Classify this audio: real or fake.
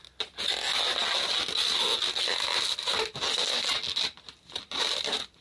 real